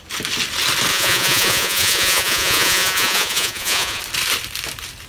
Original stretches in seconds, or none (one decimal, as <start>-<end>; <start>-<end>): 0.0-0.9; 4.0-5.1